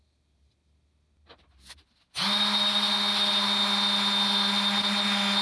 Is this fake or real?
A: real